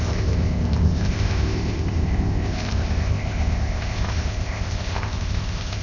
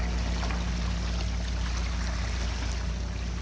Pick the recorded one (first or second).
second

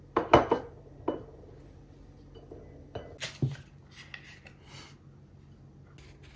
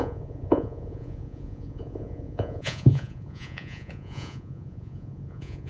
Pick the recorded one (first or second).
first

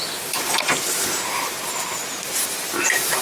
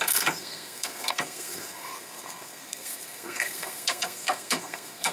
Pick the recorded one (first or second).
first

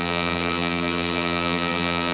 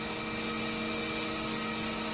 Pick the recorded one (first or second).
second